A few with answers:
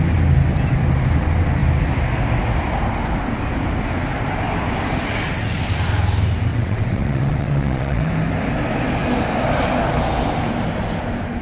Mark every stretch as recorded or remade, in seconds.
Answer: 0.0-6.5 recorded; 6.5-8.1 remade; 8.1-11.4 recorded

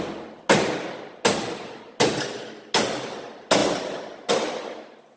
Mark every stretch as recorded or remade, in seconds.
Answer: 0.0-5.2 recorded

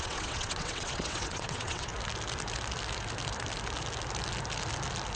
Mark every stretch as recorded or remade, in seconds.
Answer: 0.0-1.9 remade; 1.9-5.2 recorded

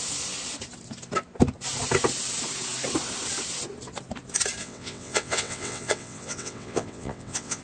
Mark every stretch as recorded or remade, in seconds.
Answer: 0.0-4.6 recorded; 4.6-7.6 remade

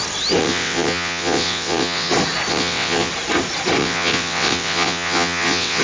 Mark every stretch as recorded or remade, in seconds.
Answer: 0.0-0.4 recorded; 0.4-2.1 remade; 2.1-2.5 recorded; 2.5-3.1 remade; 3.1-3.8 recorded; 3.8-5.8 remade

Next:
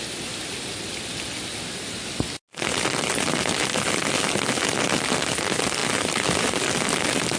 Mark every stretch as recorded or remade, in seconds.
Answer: 0.0-7.4 recorded

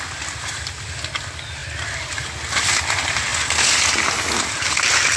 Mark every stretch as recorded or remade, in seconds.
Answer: 0.0-5.2 recorded